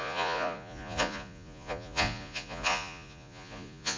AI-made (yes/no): yes